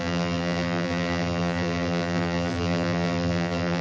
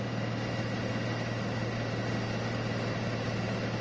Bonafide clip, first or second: second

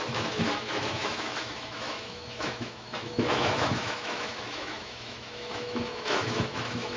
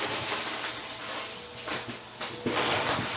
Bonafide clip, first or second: second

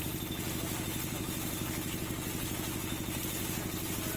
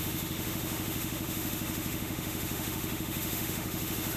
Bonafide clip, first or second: first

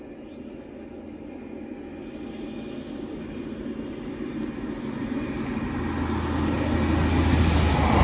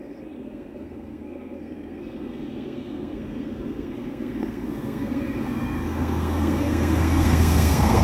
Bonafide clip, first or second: first